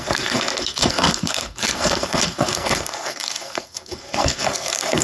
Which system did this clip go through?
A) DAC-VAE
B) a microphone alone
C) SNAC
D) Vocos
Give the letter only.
C